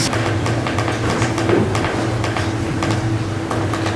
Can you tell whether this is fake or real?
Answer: real